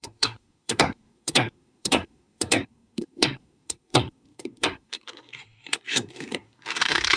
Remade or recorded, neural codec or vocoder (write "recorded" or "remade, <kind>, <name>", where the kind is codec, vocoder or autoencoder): remade, codec, SNAC